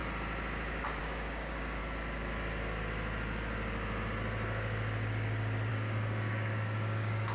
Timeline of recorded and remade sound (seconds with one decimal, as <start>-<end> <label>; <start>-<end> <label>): 0.0-1.0 recorded; 1.0-1.8 remade; 1.8-5.7 recorded; 5.7-7.3 remade